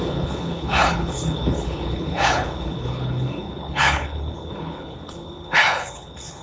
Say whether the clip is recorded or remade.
remade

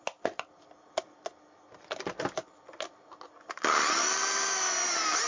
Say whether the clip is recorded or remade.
recorded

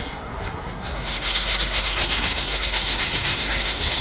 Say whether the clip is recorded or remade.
remade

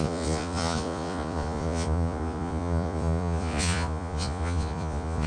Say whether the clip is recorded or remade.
remade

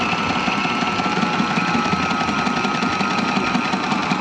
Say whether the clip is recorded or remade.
recorded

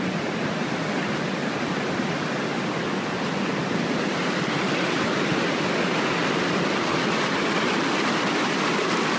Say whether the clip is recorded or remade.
recorded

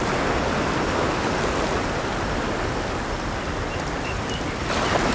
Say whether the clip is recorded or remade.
recorded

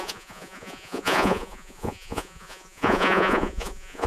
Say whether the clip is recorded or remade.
remade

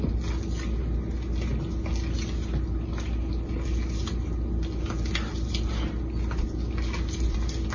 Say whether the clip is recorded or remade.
recorded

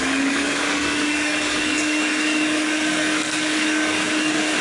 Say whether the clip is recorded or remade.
remade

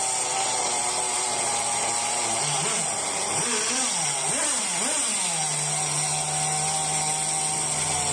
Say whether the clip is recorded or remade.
recorded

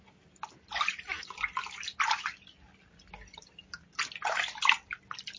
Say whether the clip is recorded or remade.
recorded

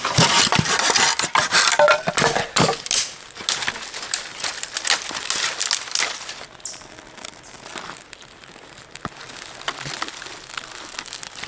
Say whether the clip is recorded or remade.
recorded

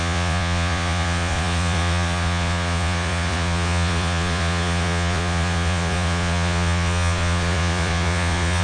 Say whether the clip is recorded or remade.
remade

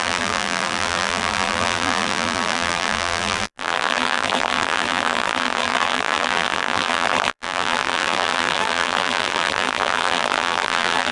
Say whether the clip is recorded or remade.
remade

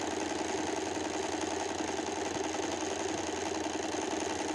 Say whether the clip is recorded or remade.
recorded